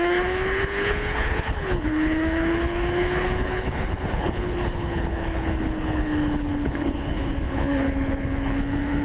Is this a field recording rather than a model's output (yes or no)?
no